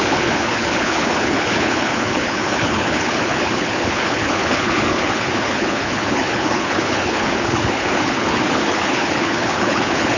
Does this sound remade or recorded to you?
remade